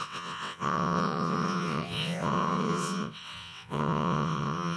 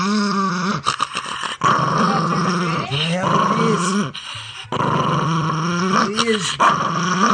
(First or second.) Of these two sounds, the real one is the second